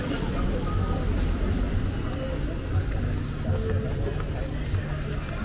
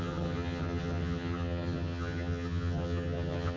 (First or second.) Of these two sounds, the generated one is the second